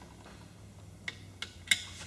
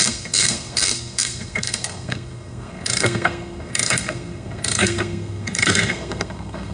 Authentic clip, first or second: first